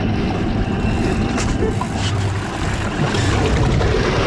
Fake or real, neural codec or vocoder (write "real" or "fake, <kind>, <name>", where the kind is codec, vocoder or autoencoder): real